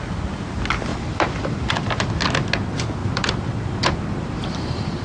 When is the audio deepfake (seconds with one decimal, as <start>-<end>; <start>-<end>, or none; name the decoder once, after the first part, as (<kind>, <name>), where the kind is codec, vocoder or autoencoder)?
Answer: 0.9-1.7 (vocoder, BigVGAN v2); 3.0-5.0